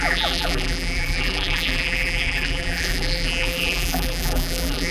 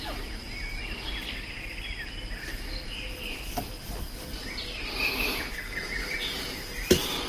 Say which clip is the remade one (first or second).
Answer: first